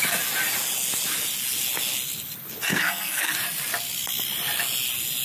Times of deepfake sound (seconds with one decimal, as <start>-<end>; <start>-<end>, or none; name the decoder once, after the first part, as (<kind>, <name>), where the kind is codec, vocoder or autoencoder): 2.7-3.3 (codec, SNAC)